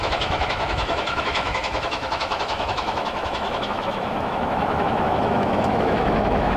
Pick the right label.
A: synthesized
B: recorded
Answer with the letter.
A